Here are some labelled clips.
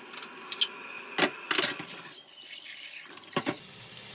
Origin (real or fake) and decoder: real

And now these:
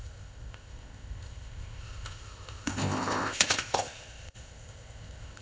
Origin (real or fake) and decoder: fake, codec, ZipCodec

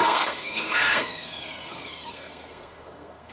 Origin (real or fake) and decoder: fake, codec, SNAC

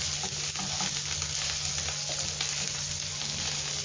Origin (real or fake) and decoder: real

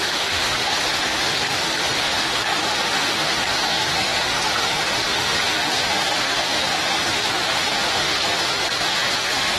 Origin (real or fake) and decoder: fake, autoencoder, DAC-VAE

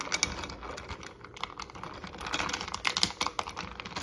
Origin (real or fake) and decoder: real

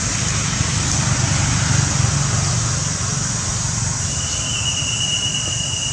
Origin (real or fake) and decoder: real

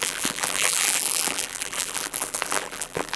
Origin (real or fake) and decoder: fake, vocoder, BigVGAN v2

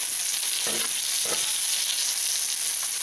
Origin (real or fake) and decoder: real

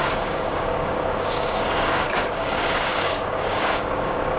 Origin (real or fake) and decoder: fake, codec, DAC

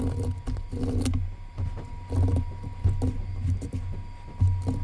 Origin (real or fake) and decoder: real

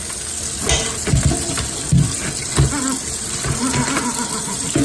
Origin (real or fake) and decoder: real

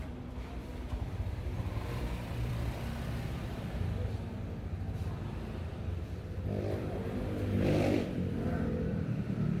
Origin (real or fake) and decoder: fake, vocoder, BigVGAN v2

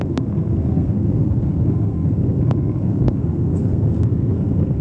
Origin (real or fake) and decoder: fake, codec, SNAC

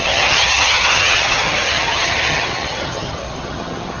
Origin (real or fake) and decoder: fake, vocoder, HiFi-GAN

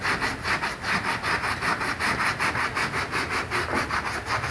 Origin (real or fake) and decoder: real